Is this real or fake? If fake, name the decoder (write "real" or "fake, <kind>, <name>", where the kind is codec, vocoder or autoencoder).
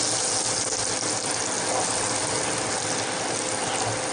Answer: real